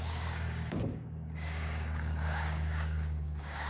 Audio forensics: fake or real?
fake